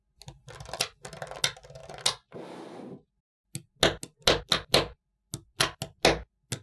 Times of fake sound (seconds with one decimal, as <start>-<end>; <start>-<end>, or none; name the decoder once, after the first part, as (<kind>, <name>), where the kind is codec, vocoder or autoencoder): none